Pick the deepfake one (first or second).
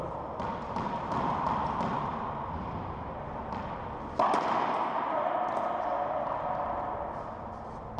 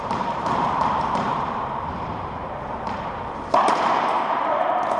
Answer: second